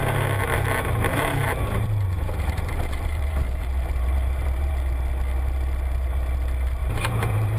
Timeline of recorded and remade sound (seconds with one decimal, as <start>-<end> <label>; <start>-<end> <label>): 0.0-1.1 recorded; 1.1-4.7 remade; 4.7-6.8 recorded; 6.8-7.6 remade